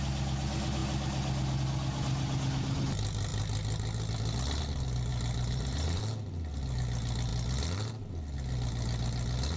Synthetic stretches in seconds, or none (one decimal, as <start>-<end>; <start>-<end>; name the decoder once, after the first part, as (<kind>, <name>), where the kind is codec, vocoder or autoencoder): 5.1-6.0 (vocoder, BigVGAN v2)